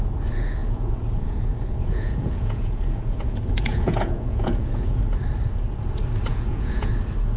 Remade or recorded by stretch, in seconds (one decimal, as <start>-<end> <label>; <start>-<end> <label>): 0.0-0.6 recorded; 0.6-5.0 remade; 5.0-6.3 recorded; 6.3-6.9 remade; 6.9-7.4 recorded